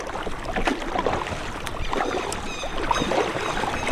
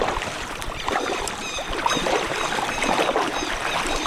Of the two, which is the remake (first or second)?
second